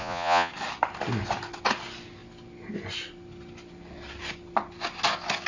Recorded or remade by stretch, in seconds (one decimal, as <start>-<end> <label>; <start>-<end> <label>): 0.0-0.5 remade; 0.5-5.5 recorded